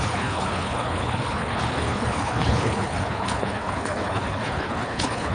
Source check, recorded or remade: remade